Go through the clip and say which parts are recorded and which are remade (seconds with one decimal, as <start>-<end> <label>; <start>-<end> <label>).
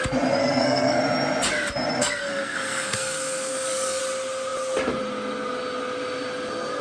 0.0-0.4 recorded; 0.4-1.0 remade; 1.0-2.0 recorded; 2.0-4.0 remade; 4.0-6.8 recorded